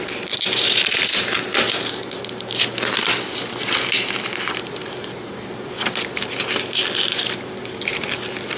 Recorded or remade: recorded